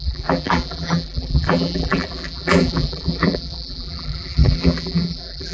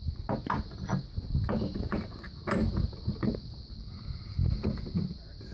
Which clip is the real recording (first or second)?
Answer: second